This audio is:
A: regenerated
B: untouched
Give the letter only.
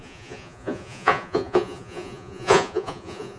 A